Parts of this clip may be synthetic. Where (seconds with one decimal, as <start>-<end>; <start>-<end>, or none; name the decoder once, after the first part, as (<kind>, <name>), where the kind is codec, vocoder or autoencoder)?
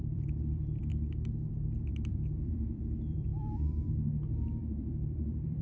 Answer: 0.0-0.9 (vocoder, BigVGAN v2); 1.5-5.6